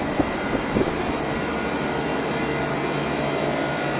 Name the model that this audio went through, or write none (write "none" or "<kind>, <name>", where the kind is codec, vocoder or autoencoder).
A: none